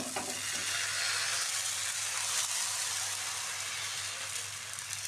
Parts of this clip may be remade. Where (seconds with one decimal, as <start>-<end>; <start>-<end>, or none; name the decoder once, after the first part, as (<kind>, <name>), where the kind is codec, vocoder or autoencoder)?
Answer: none